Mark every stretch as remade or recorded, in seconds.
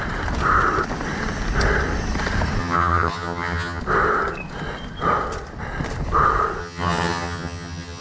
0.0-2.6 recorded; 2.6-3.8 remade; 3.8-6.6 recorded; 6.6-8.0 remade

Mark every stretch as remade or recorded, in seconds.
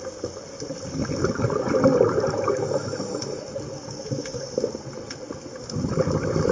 0.0-6.5 recorded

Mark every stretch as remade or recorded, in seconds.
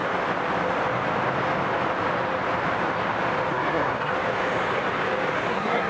0.0-3.5 recorded; 3.5-4.1 remade; 4.1-5.5 recorded; 5.5-5.9 remade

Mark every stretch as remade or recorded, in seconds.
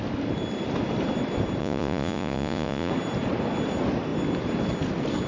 0.0-1.6 recorded; 1.6-2.9 remade; 2.9-5.3 recorded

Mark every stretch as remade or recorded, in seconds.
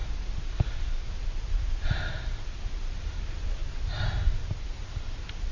0.0-3.1 remade; 3.1-3.6 recorded; 3.6-5.1 remade; 5.1-5.5 recorded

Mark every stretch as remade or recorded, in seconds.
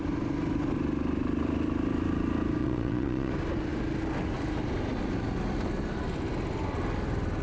0.0-2.6 recorded; 2.6-3.3 remade; 3.3-7.4 recorded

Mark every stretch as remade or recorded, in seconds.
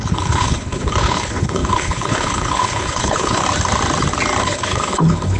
0.0-3.4 remade; 3.4-4.4 recorded; 4.4-5.4 remade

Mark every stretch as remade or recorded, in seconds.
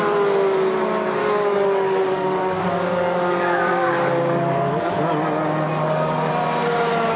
0.0-1.2 recorded; 1.2-4.9 remade; 4.9-5.7 recorded; 5.7-6.3 remade; 6.3-7.2 recorded